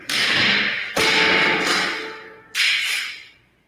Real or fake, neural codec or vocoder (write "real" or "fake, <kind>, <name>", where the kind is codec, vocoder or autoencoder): real